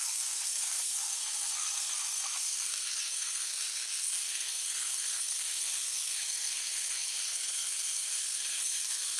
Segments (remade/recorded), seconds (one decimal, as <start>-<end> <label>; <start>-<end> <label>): 0.0-9.2 remade